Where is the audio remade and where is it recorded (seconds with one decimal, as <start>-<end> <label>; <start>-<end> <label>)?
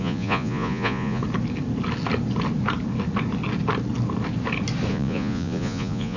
0.0-1.2 remade; 1.2-4.9 recorded; 4.9-6.2 remade